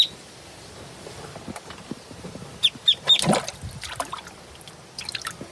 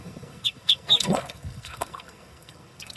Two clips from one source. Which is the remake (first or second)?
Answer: second